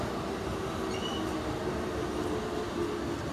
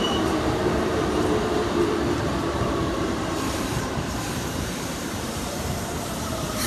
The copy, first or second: second